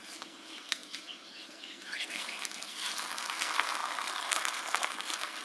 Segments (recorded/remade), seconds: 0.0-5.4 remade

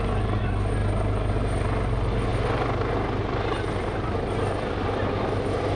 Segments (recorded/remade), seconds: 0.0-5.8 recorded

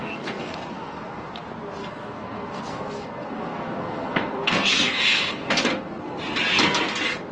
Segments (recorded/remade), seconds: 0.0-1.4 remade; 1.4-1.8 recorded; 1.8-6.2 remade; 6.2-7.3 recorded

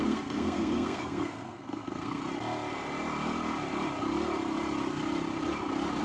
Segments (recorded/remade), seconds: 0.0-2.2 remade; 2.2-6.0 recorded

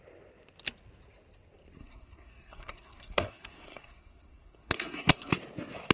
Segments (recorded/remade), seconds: 0.0-1.8 recorded; 1.8-5.3 remade; 5.3-5.9 recorded